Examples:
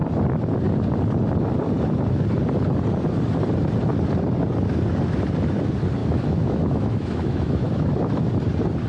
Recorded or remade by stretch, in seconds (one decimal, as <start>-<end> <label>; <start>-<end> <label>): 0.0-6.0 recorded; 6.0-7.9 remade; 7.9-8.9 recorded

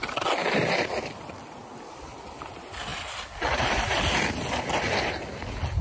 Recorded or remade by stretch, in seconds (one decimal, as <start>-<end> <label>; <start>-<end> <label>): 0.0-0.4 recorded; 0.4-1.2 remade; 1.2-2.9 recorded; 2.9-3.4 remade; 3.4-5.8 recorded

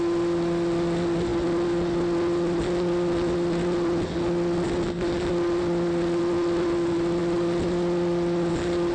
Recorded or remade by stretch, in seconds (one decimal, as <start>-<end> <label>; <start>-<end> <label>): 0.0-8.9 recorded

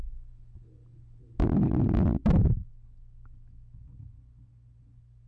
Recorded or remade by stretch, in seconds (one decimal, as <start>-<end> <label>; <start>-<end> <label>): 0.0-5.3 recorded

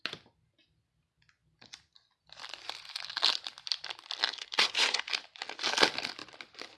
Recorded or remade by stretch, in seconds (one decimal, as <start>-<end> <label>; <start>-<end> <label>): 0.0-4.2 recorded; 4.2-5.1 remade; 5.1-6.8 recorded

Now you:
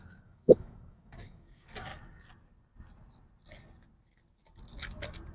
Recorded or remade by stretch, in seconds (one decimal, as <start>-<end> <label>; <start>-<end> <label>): 0.0-1.9 remade; 1.9-5.3 recorded

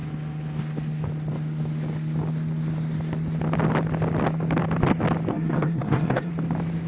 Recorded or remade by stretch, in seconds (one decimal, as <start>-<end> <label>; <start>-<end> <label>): 0.0-5.3 recorded; 5.3-6.3 remade; 6.3-6.9 recorded

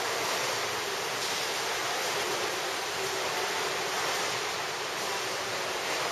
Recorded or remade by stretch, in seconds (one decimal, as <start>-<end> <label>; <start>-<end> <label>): 0.0-1.8 recorded; 1.8-5.5 remade; 5.5-6.1 recorded